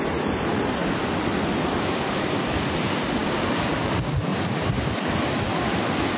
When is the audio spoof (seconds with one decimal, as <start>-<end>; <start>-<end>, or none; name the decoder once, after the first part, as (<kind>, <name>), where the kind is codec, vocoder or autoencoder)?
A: 4.3-5.1 (vocoder, BigVGAN v2)